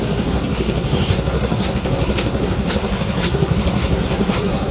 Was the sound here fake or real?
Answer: fake